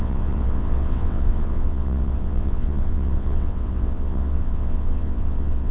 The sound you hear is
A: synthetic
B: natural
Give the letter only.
A